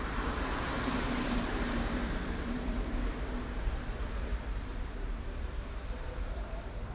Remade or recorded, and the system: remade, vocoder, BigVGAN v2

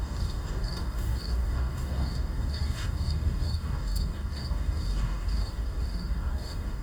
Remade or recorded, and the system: remade, codec, DAC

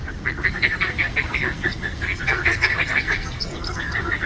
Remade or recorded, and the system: remade, codec, SNAC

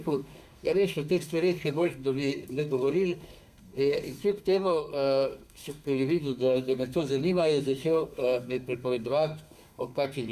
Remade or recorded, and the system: remade, codec, SNAC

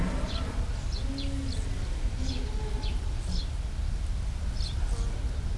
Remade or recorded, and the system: recorded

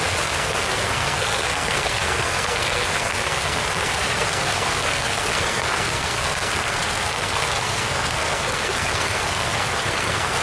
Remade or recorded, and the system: remade, codec, SNAC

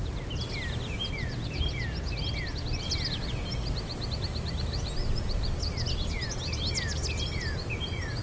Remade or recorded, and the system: recorded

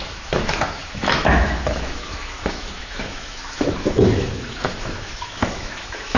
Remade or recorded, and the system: remade, autoencoder, DAC-VAE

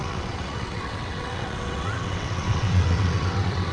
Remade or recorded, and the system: remade, vocoder, WaveNeXt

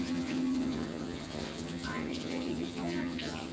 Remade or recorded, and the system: remade, vocoder, HiFi-GAN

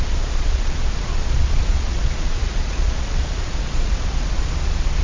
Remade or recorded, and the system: remade, vocoder, Vocos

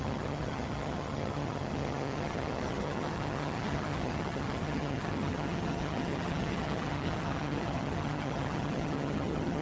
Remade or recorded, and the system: remade, vocoder, HiFi-GAN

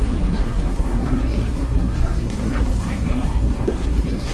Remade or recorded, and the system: remade, codec, SNAC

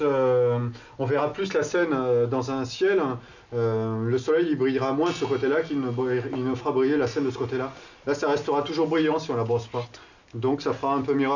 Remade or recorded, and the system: recorded